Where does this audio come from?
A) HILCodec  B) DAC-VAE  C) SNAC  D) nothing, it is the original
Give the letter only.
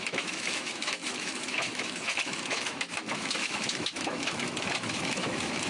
B